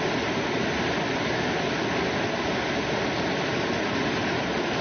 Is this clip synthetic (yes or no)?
no